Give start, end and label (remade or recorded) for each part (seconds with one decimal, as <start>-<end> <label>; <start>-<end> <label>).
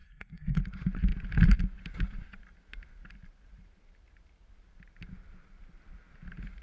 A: 0.0-0.6 remade; 0.6-6.6 recorded